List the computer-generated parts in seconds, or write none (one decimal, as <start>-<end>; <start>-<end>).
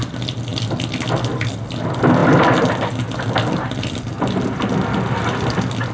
none